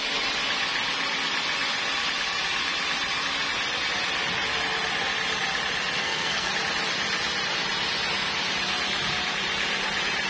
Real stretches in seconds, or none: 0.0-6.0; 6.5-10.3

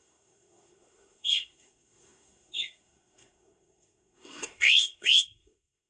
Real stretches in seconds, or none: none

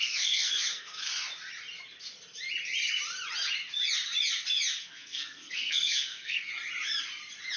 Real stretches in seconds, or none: 1.1-4.8; 6.5-7.6

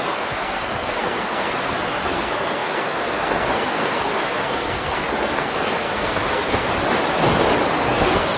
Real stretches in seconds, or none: 6.7-7.8